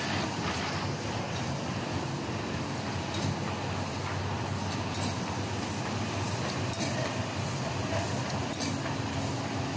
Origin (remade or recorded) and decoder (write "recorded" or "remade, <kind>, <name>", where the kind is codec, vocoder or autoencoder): recorded